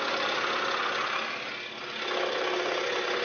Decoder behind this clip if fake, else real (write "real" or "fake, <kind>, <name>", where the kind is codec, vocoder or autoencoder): real